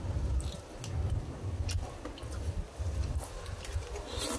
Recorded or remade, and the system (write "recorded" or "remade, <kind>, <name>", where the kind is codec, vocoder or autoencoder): recorded